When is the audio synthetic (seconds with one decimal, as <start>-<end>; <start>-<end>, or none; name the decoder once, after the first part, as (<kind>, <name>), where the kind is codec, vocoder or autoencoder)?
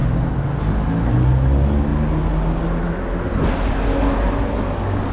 none